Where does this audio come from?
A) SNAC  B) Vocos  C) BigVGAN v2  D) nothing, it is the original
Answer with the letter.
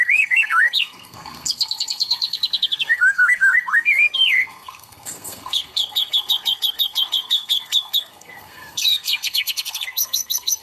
A